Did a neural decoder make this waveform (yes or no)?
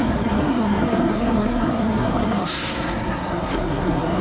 yes